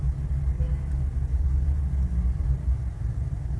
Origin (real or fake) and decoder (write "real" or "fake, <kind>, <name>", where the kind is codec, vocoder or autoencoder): real